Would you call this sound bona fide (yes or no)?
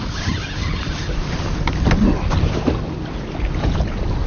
yes